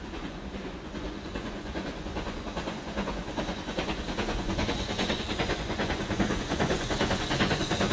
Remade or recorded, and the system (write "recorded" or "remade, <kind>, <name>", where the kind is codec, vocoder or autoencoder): remade, vocoder, Vocos